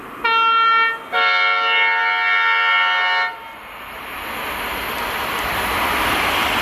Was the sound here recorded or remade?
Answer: recorded